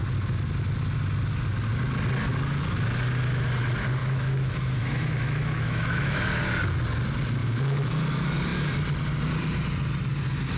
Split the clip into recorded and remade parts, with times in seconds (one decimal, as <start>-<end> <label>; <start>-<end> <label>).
0.0-4.0 recorded; 4.0-6.4 remade; 6.4-7.4 recorded; 7.4-7.9 remade; 7.9-10.6 recorded